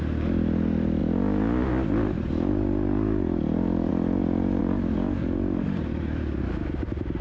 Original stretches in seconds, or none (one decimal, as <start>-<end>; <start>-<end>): 0.0-7.2